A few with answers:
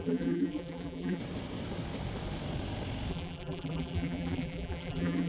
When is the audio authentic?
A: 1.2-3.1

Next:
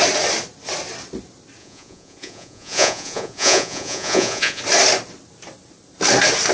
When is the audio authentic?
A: 0.0-1.6; 4.6-6.5

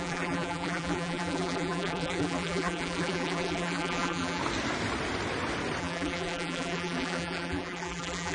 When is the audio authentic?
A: 4.4-5.8

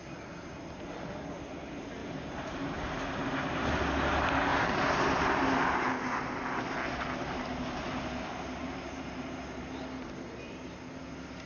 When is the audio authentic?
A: 0.0-2.0; 3.8-8.6; 9.8-11.5